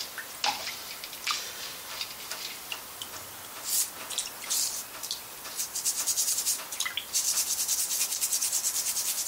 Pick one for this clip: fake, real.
real